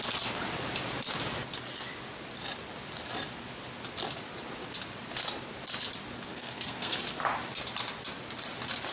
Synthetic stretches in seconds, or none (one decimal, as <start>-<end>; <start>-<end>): 6.3-7.0